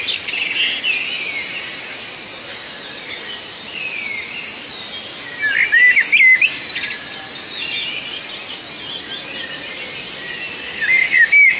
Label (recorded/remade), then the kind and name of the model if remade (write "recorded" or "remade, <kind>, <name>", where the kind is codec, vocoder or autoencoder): recorded